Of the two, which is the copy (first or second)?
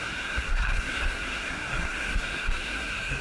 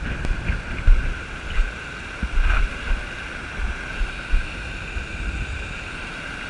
first